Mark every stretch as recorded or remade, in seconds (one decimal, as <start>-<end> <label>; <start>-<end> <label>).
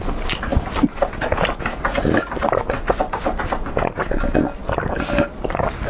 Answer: 0.0-5.9 recorded